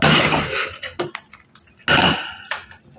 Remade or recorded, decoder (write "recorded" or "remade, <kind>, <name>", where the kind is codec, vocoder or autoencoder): recorded